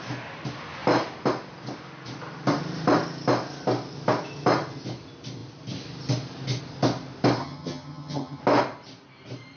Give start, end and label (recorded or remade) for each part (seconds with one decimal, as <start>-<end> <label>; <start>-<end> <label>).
0.0-7.4 recorded; 7.4-8.4 remade; 8.4-9.6 recorded